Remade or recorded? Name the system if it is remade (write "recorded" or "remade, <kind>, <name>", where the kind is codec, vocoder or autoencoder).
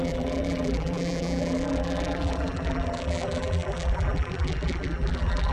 remade, vocoder, BigVGAN v2